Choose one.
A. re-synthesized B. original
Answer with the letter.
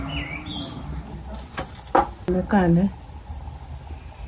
B